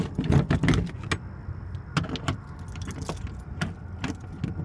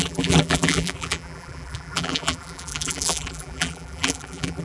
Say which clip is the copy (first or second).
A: second